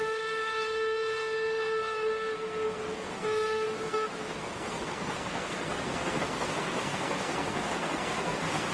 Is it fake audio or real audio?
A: fake